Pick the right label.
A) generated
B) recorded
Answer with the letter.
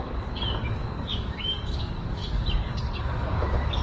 A